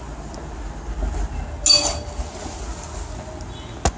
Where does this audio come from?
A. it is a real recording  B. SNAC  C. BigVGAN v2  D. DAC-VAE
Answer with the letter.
A